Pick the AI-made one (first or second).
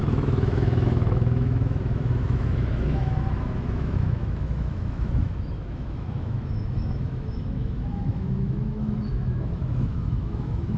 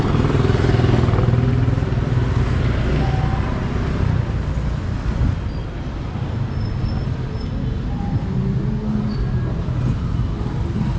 first